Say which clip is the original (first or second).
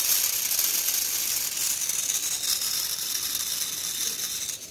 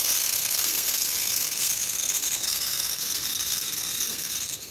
first